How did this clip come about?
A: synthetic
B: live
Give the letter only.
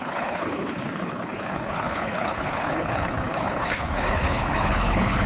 A